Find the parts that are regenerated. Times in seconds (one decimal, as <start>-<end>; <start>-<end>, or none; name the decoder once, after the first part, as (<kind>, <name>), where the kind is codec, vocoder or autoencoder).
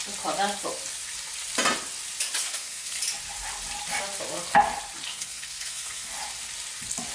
2.4-3.0 (codec, SNAC); 5.1-6.1